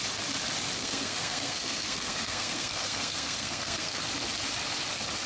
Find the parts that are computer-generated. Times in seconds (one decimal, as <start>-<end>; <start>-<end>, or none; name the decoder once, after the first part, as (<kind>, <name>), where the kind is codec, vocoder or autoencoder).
0.8-4.0 (codec, SNAC)